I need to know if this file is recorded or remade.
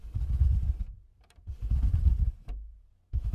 remade